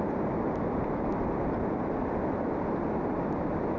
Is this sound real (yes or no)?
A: yes